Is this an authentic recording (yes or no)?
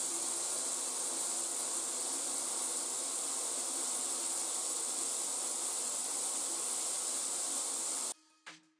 yes